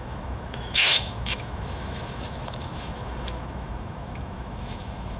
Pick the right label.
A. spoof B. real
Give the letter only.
A